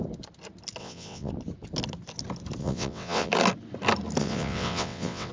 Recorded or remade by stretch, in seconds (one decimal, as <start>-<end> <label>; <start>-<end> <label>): 0.0-0.8 recorded; 0.8-1.3 remade; 1.3-2.6 recorded; 2.6-3.3 remade; 3.3-4.2 recorded; 4.2-5.3 remade